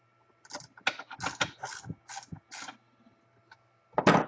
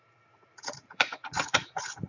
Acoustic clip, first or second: first